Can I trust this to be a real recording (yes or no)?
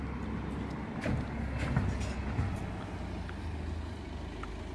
yes